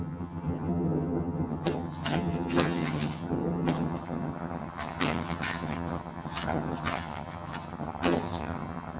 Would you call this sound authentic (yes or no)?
no